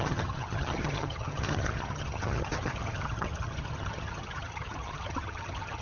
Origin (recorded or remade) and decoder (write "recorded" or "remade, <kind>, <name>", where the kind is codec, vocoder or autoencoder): remade, vocoder, HiFi-GAN